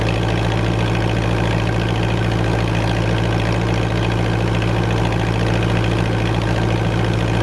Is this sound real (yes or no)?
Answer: yes